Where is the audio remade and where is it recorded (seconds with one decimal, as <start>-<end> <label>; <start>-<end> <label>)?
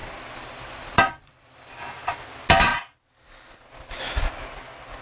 0.0-1.8 remade; 1.8-5.0 recorded